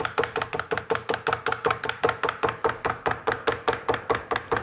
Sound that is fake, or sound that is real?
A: real